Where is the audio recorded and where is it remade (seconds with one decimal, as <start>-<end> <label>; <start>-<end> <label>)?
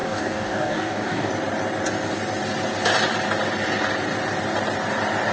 0.0-1.3 remade; 1.3-5.3 recorded